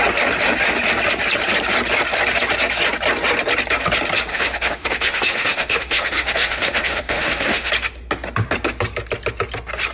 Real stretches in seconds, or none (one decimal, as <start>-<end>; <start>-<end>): 0.0-4.3; 7.7-9.9